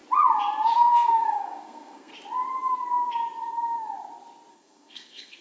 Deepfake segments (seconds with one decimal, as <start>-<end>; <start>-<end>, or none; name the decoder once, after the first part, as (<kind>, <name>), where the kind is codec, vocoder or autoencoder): 0.7-2.1 (codec, SNAC); 4.5-5.4